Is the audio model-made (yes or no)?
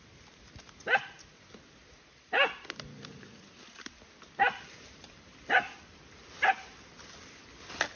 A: no